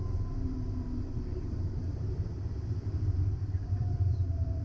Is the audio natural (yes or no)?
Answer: no